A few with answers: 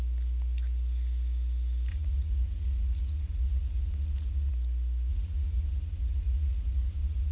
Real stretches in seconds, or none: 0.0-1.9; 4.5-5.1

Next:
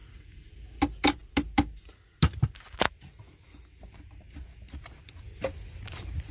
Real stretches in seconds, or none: 0.5-6.3

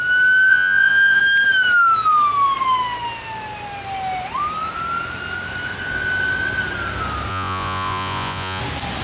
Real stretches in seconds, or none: 0.0-0.5; 1.2-7.3; 8.6-9.0

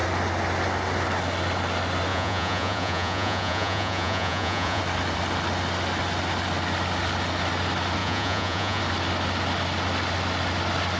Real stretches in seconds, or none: 0.0-2.1; 4.8-8.0; 8.8-11.0

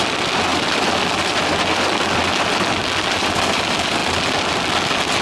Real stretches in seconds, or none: 0.0-5.2

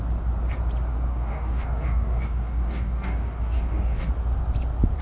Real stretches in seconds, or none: 0.0-1.1; 4.1-5.0